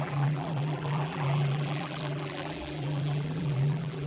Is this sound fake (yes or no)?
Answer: yes